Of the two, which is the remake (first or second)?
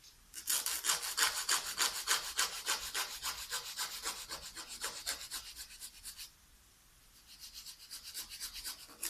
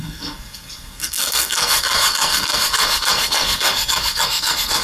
second